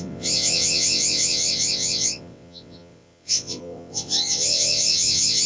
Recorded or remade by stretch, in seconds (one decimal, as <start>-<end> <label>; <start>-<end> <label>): 0.0-5.5 remade